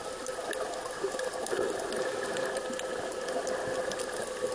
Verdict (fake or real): real